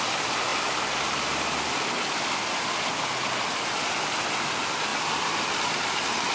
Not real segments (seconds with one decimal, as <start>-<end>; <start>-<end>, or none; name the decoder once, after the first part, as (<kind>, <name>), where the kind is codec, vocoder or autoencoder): 0.5-1.7 (vocoder, BigVGAN v2); 4.9-6.3

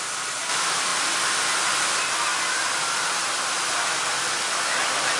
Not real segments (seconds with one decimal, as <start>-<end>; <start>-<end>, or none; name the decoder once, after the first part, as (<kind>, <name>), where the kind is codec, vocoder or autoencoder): none

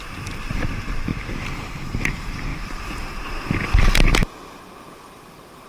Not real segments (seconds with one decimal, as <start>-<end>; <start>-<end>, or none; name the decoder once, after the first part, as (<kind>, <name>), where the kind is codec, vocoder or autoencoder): 0.0-1.1 (vocoder, BigVGAN v2); 2.0-2.5; 5.1-5.7

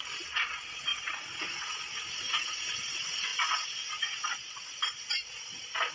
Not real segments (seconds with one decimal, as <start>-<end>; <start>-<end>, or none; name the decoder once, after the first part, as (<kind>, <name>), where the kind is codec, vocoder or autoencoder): none

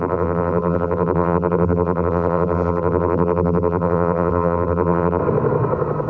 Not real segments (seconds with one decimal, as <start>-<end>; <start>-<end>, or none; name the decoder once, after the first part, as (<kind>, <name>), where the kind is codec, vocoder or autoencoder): 0.0-5.2 (vocoder, BigVGAN v2)

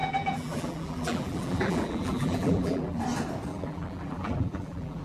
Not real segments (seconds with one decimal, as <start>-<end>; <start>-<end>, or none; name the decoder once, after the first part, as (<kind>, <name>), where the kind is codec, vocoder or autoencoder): 0.0-3.0 (vocoder, BigVGAN v2); 3.5-5.0

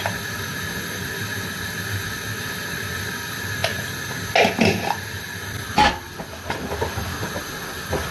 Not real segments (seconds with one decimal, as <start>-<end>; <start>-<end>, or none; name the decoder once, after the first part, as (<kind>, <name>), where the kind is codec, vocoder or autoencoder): 0.0-3.6 (vocoder, BigVGAN v2); 4.5-8.1